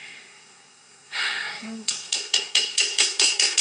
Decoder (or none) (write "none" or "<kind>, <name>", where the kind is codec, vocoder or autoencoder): codec, SNAC